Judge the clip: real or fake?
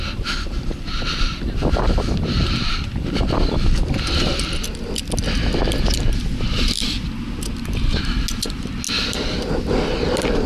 real